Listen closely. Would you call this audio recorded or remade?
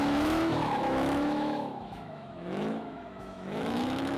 remade